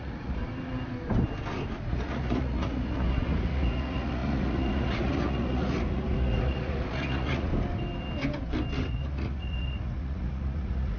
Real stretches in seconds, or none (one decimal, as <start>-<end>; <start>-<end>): 0.4-1.9; 7.5-8.8